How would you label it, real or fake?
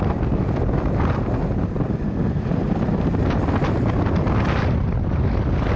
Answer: real